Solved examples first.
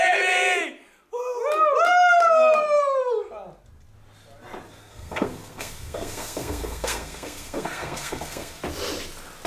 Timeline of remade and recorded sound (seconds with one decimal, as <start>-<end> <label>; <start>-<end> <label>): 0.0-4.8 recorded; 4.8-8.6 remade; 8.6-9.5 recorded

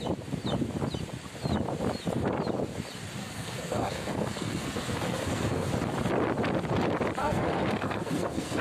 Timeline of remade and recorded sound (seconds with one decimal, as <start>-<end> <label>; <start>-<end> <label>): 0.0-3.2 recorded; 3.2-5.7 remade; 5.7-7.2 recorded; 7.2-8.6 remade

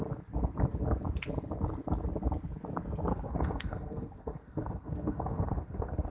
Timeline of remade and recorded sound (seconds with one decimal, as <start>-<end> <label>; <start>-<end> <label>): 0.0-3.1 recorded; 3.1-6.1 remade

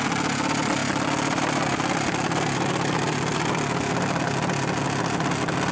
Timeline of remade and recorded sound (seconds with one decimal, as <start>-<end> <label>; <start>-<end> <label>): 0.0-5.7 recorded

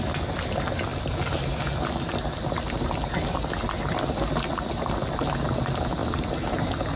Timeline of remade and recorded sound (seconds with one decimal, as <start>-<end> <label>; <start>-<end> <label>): 0.0-7.0 recorded